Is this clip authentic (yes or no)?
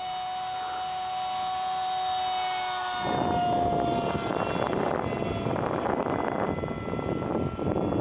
yes